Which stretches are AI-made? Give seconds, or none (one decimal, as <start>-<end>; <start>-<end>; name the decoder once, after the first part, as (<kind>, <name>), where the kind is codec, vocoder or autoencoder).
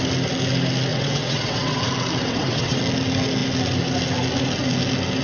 0.9-1.8 (vocoder, WaveNeXt); 2.2-2.8